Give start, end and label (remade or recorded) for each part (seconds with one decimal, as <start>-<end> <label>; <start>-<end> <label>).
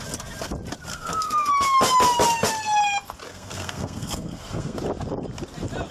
0.0-0.9 recorded; 0.9-1.5 remade; 1.5-3.3 recorded; 3.3-4.8 remade; 4.8-5.9 recorded